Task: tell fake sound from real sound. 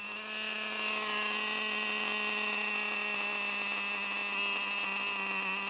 real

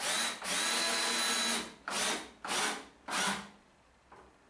real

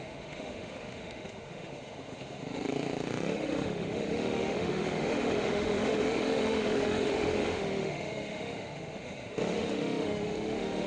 fake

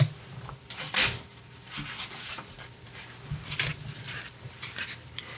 real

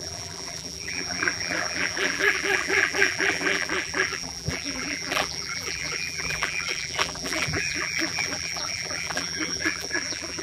fake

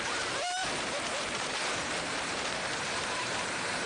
fake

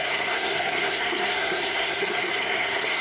fake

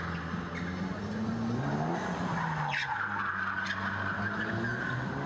real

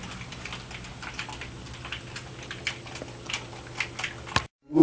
real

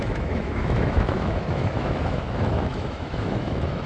fake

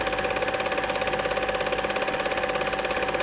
real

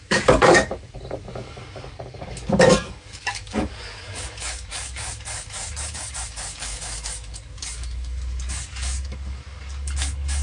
fake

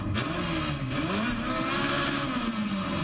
real